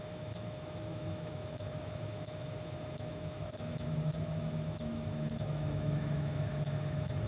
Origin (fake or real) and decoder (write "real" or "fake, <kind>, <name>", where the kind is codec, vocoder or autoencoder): fake, autoencoder, DAC-VAE